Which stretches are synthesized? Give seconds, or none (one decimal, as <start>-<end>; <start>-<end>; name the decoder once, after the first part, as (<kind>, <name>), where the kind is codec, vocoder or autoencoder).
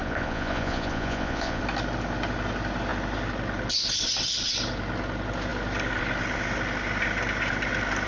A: 0.0-1.6 (vocoder, Vocos)